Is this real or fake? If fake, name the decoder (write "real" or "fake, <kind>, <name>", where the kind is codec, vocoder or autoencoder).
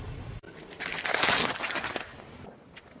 real